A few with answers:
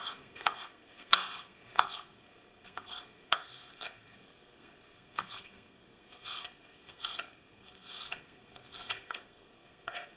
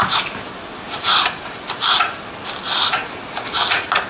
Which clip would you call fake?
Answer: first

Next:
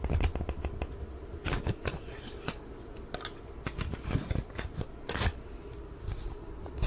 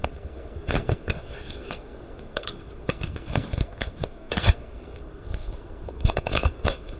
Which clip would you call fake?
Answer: second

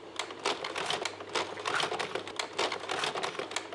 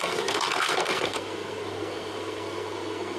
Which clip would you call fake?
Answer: second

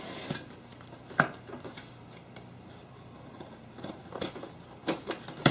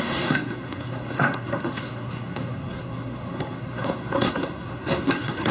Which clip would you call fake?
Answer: second